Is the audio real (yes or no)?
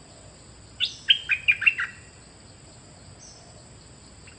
yes